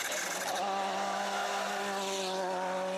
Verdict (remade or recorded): recorded